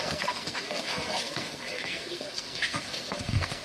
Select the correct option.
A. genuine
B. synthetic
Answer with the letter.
B